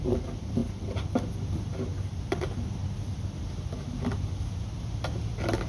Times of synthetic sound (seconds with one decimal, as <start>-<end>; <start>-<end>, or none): none